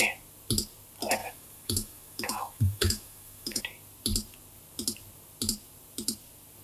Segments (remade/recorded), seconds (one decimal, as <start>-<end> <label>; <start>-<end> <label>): 0.0-1.2 recorded; 1.2-3.6 remade; 3.6-6.6 recorded